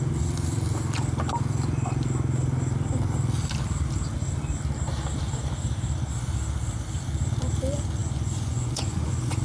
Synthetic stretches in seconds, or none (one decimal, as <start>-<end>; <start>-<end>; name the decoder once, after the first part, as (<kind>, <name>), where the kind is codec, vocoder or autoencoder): 8.0-9.4 (vocoder, Vocos)